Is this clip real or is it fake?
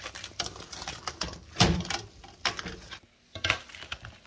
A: real